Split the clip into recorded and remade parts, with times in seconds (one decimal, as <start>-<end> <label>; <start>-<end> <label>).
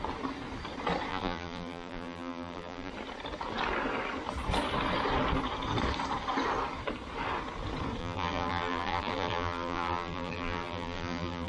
0.0-1.1 recorded; 1.1-2.9 remade; 2.9-8.0 recorded; 8.0-11.5 remade